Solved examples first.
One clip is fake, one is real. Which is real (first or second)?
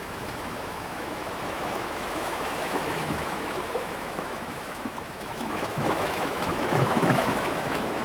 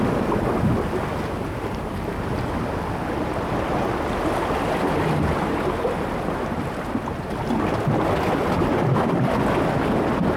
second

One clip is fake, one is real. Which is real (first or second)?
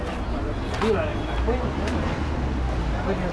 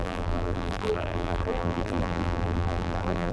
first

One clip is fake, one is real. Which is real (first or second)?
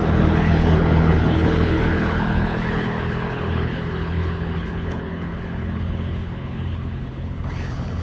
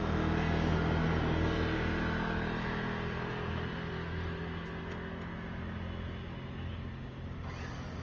second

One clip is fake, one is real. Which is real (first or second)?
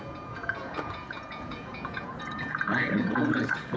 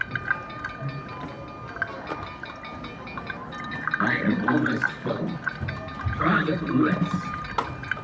second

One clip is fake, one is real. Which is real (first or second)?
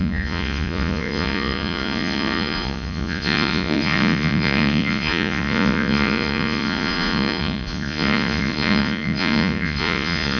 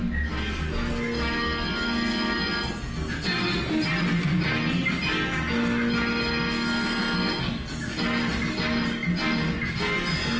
second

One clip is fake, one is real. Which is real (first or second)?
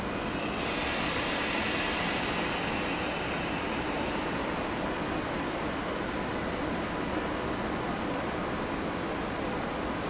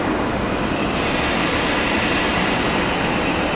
first